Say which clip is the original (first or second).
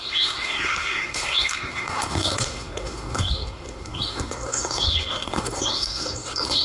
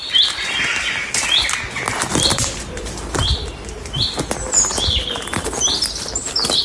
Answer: second